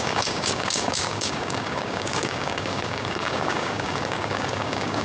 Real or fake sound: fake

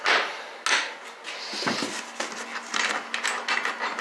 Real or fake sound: real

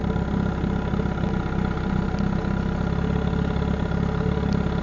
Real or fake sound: real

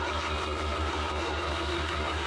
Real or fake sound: fake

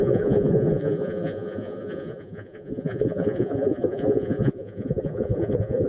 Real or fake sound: fake